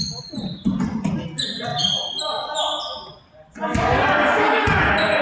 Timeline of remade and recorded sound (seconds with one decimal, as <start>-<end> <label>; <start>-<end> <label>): 0.0-5.2 recorded